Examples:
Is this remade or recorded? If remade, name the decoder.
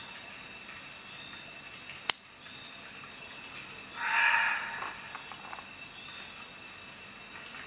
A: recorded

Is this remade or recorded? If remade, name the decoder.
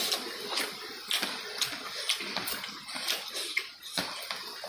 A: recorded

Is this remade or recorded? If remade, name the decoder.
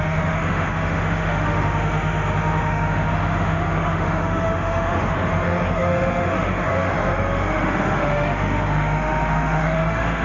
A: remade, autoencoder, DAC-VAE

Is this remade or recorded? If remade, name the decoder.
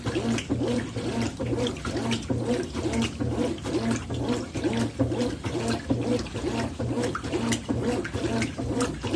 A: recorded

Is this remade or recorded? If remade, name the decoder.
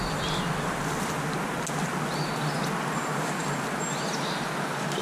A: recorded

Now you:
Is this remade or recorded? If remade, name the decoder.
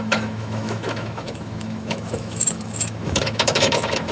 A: remade, autoencoder, DAC-VAE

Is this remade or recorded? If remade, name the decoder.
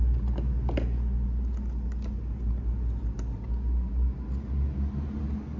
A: recorded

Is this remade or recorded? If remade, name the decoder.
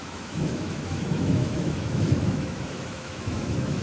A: remade, autoencoder, DAC-VAE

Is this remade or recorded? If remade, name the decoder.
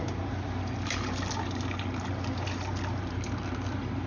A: recorded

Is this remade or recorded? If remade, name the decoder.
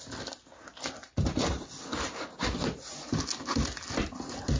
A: recorded